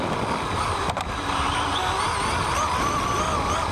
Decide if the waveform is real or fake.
real